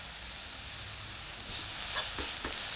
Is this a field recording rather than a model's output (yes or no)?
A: yes